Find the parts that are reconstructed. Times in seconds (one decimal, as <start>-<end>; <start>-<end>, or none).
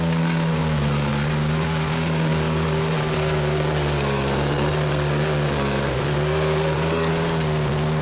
0.0-7.1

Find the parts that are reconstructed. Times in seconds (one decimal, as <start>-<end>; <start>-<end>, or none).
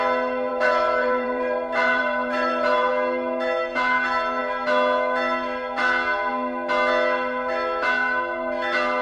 0.5-2.9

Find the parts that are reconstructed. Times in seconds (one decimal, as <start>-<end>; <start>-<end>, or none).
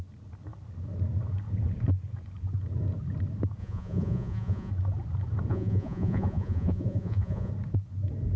3.6-4.7; 5.5-7.5